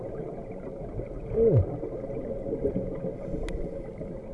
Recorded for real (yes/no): yes